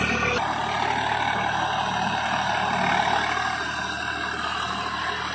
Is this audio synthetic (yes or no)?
no